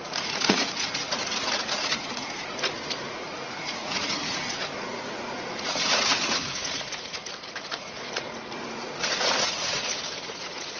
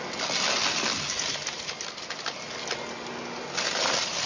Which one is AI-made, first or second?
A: first